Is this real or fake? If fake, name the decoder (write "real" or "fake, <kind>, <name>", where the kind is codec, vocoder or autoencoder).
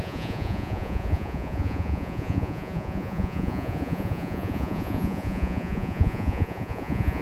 fake, vocoder, Vocos